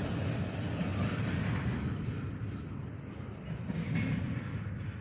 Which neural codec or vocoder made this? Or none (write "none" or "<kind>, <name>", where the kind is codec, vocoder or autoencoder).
none